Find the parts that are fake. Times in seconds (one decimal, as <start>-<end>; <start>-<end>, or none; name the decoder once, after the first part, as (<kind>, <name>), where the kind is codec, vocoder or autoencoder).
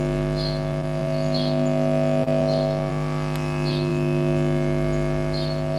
none